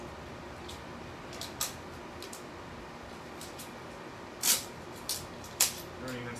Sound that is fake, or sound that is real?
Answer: real